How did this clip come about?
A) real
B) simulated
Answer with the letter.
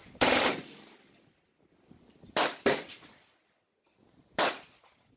B